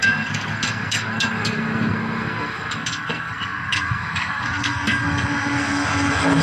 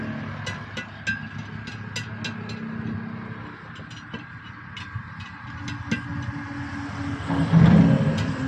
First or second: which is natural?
second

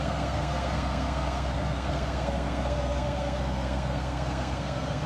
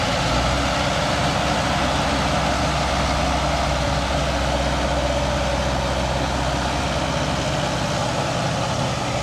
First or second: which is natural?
second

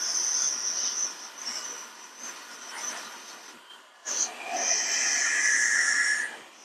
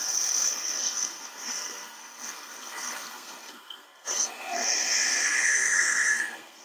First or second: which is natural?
first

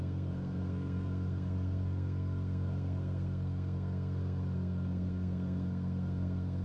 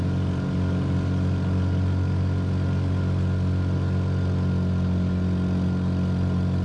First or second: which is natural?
second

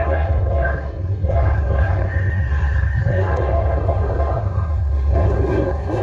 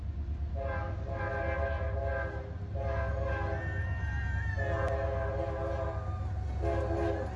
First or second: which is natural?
second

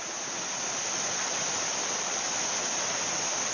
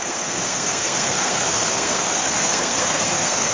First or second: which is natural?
first